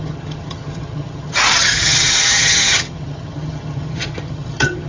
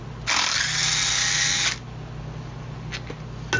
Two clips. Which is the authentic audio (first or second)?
second